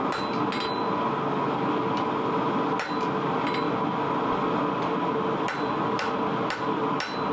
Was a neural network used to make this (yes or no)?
no